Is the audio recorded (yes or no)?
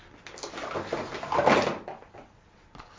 yes